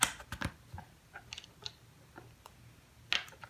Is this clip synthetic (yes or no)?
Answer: no